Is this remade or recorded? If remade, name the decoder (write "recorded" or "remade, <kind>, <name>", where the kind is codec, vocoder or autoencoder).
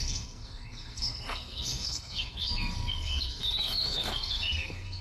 remade, codec, SNAC